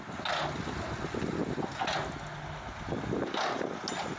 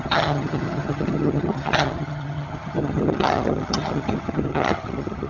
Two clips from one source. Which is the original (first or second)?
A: first